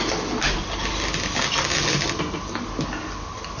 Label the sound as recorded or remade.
recorded